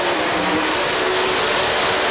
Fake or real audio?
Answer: real